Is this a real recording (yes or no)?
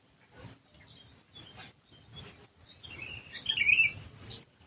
yes